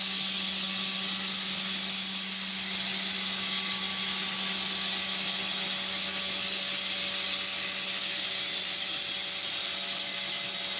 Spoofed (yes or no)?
no